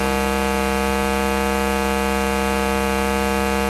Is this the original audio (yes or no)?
yes